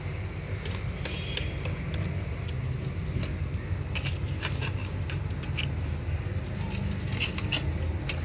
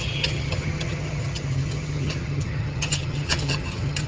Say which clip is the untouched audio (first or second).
first